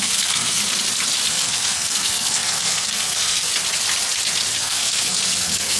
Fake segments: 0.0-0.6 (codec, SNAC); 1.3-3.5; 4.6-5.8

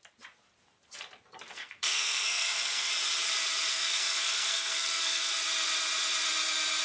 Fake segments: 1.5-2.9 (codec, SNAC); 3.7-5.3